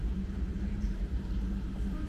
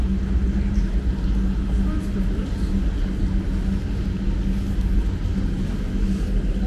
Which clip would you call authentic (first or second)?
second